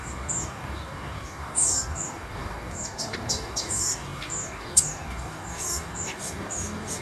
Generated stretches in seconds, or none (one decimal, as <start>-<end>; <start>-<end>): 0.0-7.0